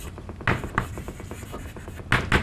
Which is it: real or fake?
real